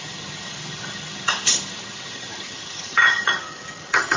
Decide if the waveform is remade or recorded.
remade